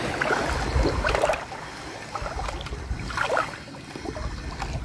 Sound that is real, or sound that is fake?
real